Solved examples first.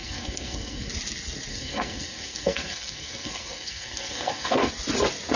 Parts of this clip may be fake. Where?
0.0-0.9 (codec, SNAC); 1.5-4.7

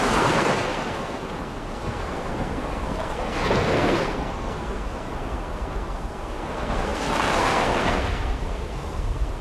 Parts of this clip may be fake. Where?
0.0-9.4 (codec, SNAC)

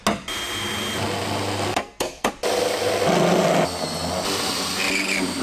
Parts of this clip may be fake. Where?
1.7-2.3 (codec, SNAC)

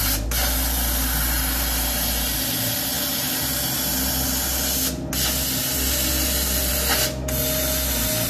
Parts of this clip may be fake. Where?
none